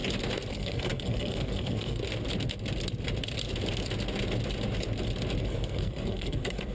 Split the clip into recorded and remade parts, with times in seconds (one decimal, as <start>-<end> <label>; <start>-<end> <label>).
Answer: 0.0-0.5 recorded; 0.5-2.0 remade; 2.0-5.4 recorded; 5.4-6.7 remade